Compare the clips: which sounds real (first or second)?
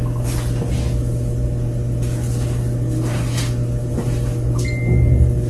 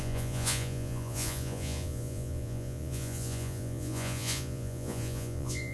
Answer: first